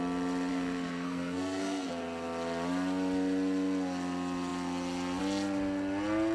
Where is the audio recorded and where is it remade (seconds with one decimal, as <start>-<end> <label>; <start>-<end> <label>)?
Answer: 0.0-0.5 recorded; 0.5-1.9 remade; 1.9-6.3 recorded